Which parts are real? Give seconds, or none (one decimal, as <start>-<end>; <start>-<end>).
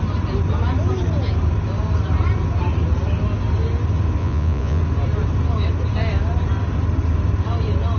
0.0-4.2; 4.8-8.0